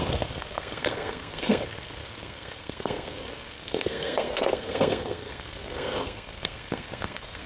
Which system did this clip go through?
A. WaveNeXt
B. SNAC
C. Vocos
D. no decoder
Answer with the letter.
B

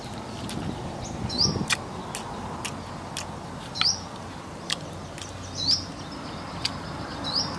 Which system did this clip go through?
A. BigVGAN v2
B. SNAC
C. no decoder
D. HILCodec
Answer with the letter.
C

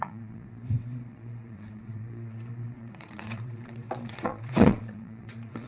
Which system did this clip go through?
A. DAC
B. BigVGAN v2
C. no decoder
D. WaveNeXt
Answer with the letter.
D